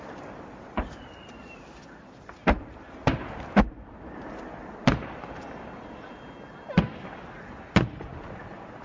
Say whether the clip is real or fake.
real